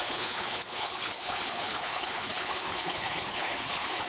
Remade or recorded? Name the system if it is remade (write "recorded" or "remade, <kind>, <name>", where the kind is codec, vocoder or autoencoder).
remade, codec, HILCodec